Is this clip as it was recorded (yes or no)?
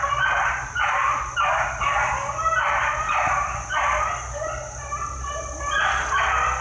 yes